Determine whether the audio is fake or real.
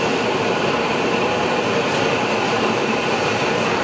fake